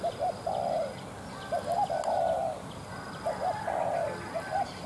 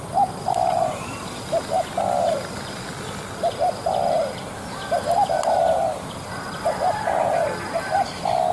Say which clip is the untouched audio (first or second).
first